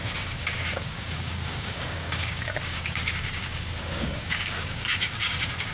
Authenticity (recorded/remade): remade